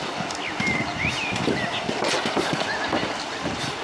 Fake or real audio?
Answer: real